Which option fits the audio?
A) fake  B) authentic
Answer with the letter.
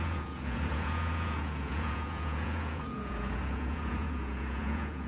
A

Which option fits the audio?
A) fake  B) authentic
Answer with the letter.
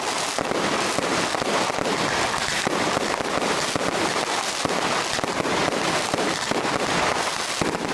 B